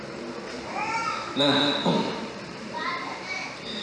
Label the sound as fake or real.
fake